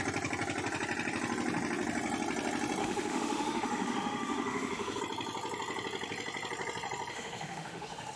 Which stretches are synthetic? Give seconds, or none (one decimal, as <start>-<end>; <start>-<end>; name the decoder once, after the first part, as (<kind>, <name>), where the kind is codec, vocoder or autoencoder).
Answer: 2.8-5.0 (autoencoder, DAC-VAE); 7.1-8.2